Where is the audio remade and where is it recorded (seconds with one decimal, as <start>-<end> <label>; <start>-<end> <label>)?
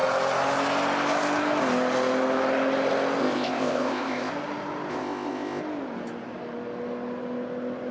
0.0-3.2 recorded; 3.2-4.3 remade; 4.3-4.9 recorded; 4.9-5.6 remade; 5.6-7.9 recorded